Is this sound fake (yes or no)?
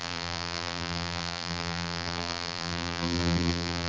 yes